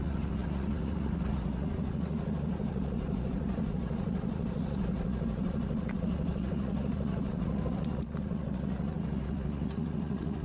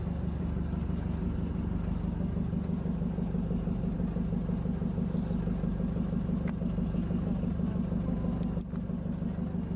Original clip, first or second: second